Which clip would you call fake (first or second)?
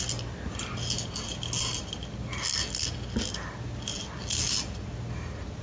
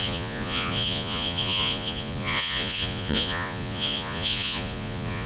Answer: second